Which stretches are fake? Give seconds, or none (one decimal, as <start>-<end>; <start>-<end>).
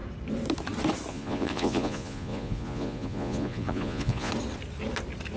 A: 1.1-4.3